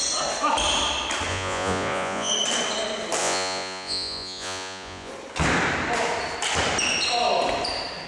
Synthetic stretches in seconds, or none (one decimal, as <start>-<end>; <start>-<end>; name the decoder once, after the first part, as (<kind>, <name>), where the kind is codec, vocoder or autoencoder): 1.3-2.3 (vocoder, Vocos); 3.2-5.1